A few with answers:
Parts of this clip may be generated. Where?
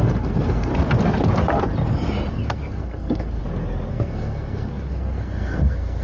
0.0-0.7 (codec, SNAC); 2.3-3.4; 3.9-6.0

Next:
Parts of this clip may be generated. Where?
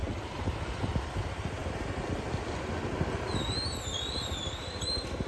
none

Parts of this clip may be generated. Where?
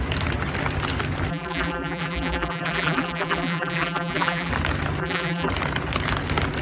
1.3-4.5 (vocoder, BigVGAN v2); 5.0-5.5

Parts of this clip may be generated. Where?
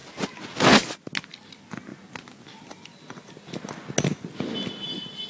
none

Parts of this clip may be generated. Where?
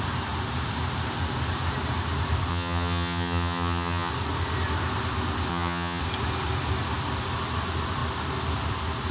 2.5-4.1 (vocoder, HiFi-GAN); 5.5-6.0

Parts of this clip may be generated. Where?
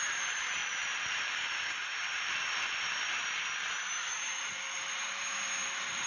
0.0-6.1 (vocoder, BigVGAN v2)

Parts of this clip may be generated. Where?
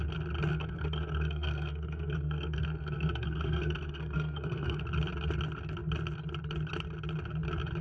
0.5-4.8 (codec, SNAC)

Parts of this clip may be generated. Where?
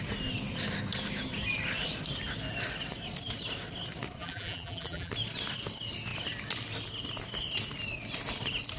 4.2-5.1 (vocoder, BigVGAN v2)